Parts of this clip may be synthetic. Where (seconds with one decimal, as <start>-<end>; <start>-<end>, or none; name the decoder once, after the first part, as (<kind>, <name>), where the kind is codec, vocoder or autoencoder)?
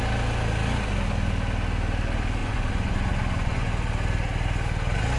2.4-3.7 (vocoder, Vocos)